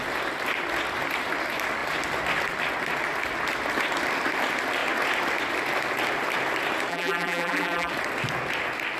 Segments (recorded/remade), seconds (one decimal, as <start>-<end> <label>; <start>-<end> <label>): 0.0-6.9 recorded; 6.9-7.9 remade; 7.9-9.0 recorded